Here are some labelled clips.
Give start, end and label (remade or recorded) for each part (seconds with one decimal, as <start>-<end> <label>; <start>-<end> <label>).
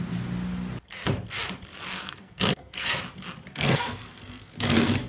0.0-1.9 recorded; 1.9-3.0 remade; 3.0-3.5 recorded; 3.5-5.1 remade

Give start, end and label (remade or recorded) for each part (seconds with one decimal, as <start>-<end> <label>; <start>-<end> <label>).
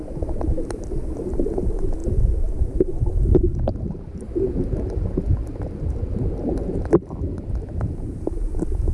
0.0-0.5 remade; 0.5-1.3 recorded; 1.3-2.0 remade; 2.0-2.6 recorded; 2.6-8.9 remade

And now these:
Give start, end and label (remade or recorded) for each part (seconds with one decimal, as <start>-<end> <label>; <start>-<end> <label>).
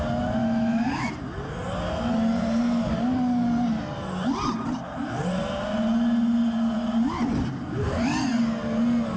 0.0-0.4 recorded; 0.4-1.1 remade; 1.1-9.2 recorded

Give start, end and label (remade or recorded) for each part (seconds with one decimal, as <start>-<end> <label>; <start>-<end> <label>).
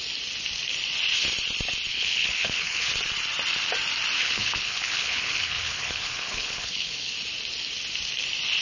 0.0-1.9 recorded; 1.9-2.9 remade; 2.9-4.2 recorded; 4.2-7.1 remade; 7.1-8.6 recorded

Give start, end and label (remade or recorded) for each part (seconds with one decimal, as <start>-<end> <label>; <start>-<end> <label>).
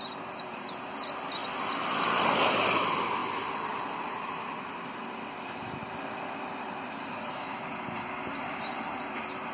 0.0-9.5 recorded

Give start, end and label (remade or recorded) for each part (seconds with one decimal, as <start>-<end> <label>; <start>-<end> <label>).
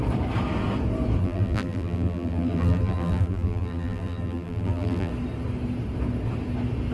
0.0-1.2 recorded; 1.2-5.1 remade; 5.1-6.9 recorded